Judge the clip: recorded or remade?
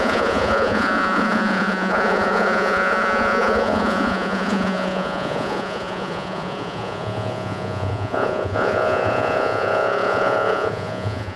remade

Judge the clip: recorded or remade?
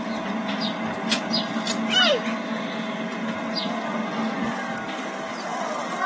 recorded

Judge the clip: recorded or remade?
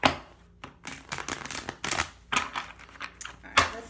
recorded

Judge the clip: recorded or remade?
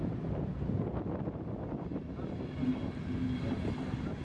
recorded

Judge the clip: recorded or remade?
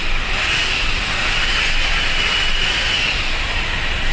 recorded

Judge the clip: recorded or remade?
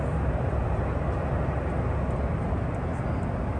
recorded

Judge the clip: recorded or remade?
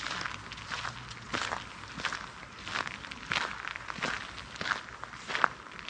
recorded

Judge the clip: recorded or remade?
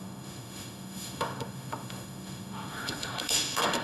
remade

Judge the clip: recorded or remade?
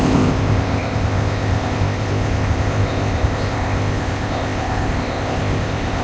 remade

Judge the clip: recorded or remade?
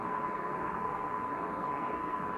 remade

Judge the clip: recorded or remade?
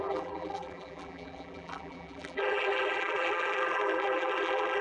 remade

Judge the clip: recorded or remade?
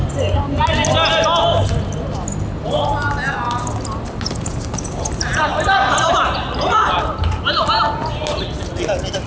recorded